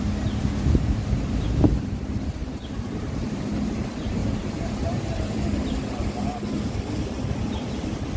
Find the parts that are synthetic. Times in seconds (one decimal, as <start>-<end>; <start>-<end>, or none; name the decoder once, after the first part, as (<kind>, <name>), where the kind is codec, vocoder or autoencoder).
2.4-3.4 (vocoder, BigVGAN v2); 4.2-5.4